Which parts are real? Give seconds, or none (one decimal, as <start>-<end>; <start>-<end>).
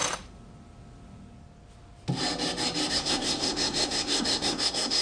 0.0-2.9